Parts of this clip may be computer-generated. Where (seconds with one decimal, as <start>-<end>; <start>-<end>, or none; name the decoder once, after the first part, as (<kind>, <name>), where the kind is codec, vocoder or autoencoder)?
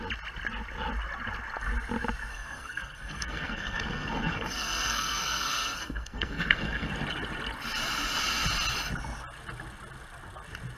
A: 2.3-6.9 (codec, SNAC)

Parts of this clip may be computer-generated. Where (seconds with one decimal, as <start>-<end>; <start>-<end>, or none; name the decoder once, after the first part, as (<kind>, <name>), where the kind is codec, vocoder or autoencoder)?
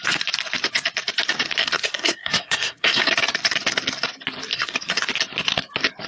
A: 1.6-3.1 (codec, SNAC); 4.5-5.0